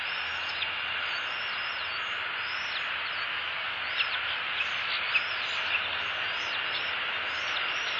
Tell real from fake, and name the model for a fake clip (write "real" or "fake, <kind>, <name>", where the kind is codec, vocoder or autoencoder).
real